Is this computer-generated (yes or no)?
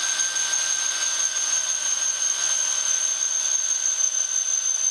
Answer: yes